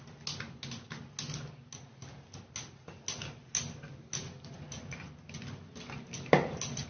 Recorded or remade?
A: recorded